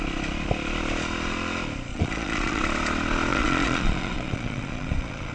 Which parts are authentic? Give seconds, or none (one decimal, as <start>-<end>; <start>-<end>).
0.0-1.9; 2.6-3.3

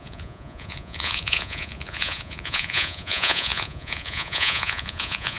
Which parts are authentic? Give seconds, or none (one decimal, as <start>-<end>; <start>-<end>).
none

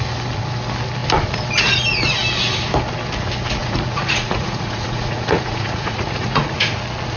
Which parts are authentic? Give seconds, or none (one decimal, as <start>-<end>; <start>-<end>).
0.0-3.6; 6.8-7.2